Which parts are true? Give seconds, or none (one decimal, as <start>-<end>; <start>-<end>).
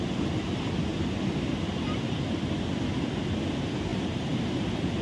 0.0-3.9